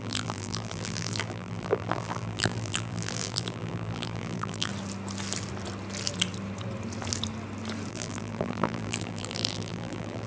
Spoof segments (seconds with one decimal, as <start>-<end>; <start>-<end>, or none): 0.0-4.7; 7.9-10.3